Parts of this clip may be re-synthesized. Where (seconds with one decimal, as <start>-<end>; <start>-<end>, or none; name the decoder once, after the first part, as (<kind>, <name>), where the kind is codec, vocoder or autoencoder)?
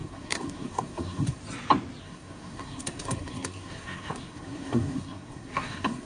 0.0-1.4 (codec, SNAC); 2.0-6.1